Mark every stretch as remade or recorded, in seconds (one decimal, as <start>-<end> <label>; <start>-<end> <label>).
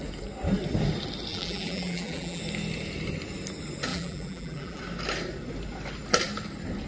0.0-1.3 recorded; 1.3-2.4 remade; 2.4-3.9 recorded; 3.9-4.8 remade; 4.8-6.9 recorded